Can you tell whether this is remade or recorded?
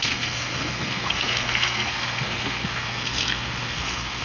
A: remade